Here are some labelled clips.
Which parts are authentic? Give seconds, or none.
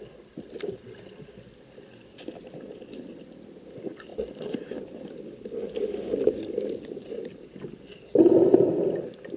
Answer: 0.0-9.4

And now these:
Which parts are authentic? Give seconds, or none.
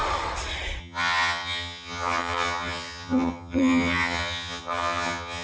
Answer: 0.0-0.8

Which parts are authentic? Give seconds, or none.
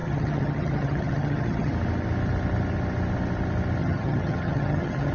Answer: 1.7-3.8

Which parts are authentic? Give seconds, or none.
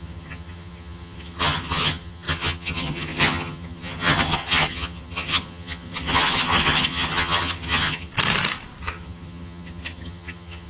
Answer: 8.1-8.8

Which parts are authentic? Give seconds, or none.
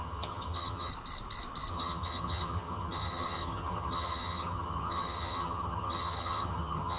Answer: 0.9-1.7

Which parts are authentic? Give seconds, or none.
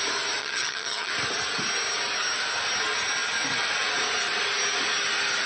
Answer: 0.0-0.4; 1.1-5.5